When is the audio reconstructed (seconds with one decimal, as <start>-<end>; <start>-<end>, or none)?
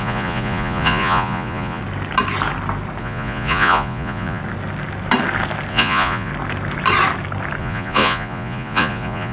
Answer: 0.0-1.8; 3.0-4.4; 5.7-6.3; 7.6-9.3